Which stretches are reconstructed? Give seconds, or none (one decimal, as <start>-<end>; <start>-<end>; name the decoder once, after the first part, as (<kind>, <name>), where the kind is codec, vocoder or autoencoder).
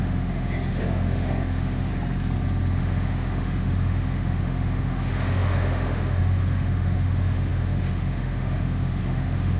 0.0-1.9 (autoencoder, DAC-VAE); 2.8-9.6